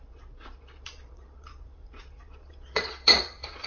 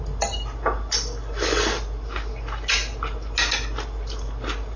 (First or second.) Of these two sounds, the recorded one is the second